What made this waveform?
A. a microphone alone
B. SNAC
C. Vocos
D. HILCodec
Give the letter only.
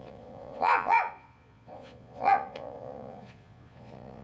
C